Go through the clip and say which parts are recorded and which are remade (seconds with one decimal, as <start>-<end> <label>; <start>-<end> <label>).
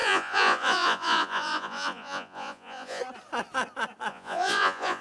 0.0-3.0 remade; 3.0-4.1 recorded; 4.1-5.0 remade